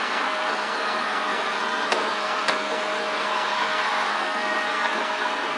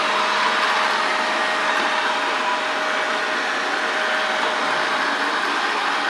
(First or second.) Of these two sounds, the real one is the second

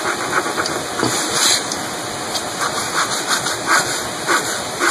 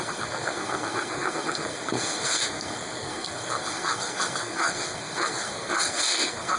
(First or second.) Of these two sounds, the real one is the first